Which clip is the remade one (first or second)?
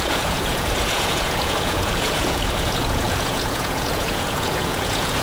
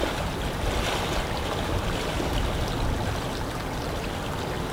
first